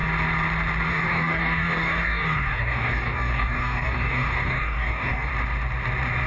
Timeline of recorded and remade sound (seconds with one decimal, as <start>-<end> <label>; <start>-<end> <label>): 0.0-0.9 recorded; 0.9-5.3 remade; 5.3-6.3 recorded